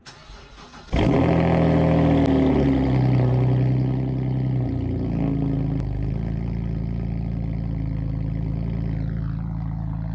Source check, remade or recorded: recorded